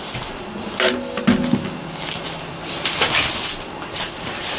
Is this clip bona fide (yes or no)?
yes